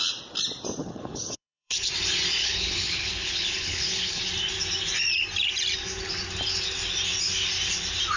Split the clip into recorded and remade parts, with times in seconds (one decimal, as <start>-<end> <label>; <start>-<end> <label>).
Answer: 0.0-0.8 recorded; 0.8-1.9 remade; 1.9-2.4 recorded; 2.4-4.2 remade; 4.2-8.2 recorded